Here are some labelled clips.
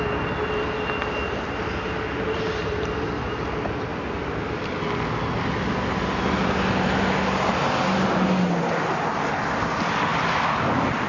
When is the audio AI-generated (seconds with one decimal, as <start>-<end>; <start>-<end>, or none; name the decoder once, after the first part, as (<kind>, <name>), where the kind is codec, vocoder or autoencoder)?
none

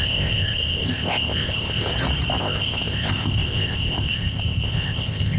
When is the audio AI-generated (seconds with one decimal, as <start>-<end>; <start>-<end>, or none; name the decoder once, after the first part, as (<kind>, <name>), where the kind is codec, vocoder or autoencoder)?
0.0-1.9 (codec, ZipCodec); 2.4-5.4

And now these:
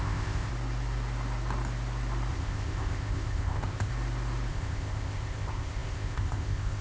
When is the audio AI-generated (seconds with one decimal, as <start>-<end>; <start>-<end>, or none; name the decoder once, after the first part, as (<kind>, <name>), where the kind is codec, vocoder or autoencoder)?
0.0-0.5 (codec, ZipCodec); 2.3-3.9; 4.5-6.8

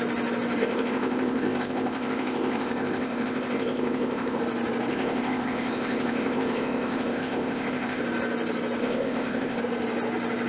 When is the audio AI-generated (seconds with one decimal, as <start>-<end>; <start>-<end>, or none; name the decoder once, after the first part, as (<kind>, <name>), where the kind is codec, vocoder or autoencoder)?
0.6-4.4 (codec, ZipCodec); 4.9-8.0; 8.8-9.6